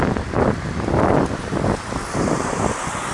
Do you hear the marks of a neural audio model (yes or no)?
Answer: yes